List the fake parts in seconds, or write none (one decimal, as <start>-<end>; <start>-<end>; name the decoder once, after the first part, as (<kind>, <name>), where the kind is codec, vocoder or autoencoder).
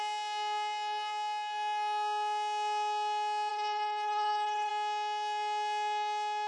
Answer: 3.5-4.7 (codec, HILCodec)